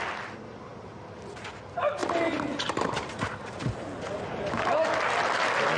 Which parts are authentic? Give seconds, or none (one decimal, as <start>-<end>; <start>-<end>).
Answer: 0.0-5.8